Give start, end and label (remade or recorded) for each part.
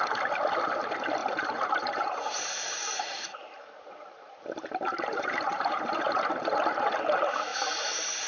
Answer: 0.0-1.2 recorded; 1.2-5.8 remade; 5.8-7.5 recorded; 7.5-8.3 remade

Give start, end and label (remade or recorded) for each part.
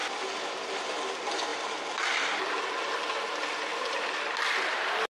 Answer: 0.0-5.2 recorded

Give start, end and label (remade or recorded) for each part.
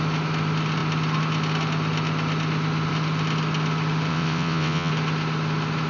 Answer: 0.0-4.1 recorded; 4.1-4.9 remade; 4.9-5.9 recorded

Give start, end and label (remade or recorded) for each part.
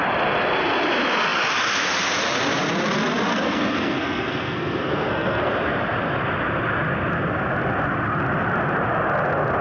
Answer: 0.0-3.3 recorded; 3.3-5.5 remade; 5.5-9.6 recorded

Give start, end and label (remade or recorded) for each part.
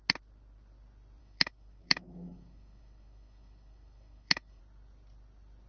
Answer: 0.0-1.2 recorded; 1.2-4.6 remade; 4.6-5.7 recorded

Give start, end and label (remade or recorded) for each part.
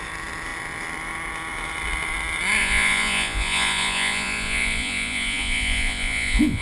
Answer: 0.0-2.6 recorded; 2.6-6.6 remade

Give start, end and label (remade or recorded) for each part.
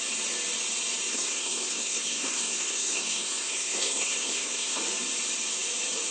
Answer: 0.0-1.1 recorded; 1.1-4.8 remade; 4.8-6.1 recorded